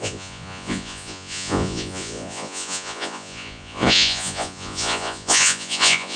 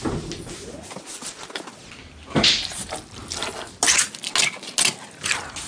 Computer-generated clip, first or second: first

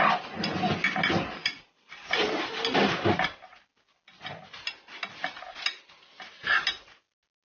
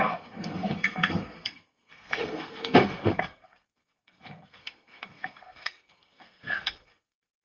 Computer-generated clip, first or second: second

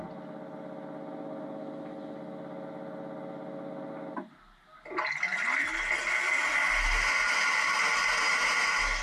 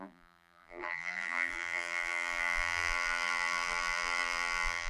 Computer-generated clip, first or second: second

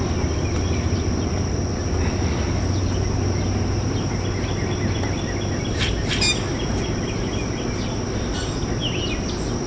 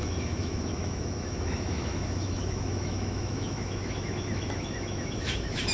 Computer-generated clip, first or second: second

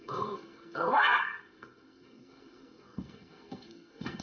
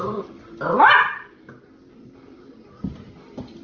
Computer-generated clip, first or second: first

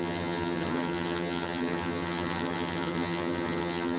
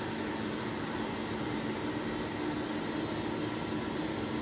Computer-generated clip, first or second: first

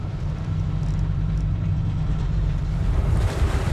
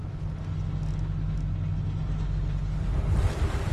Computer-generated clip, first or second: first